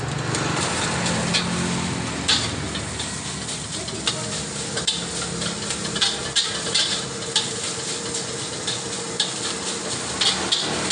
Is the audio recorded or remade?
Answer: recorded